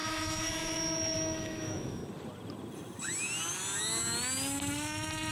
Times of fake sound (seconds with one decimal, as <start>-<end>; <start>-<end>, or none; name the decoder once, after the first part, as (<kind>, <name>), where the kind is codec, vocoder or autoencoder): 0.0-2.0 (autoencoder, DAC-VAE)